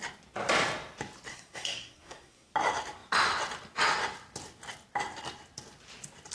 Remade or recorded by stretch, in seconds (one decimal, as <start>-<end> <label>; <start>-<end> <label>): 0.0-1.3 recorded; 1.3-2.5 remade; 2.5-6.3 recorded